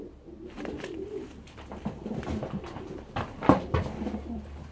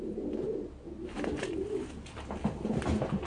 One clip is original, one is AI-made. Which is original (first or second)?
second